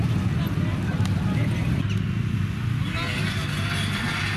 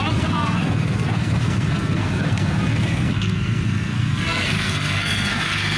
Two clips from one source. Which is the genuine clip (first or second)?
first